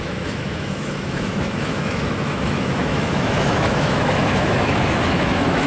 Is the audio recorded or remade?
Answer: remade